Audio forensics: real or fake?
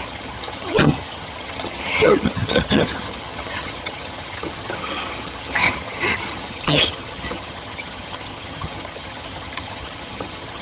fake